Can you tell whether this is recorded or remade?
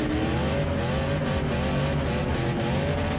recorded